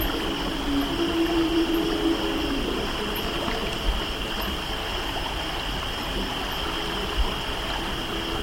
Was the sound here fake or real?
real